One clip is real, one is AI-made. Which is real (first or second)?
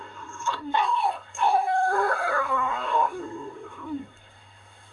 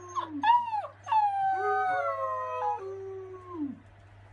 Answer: second